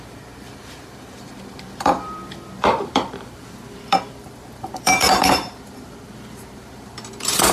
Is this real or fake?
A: fake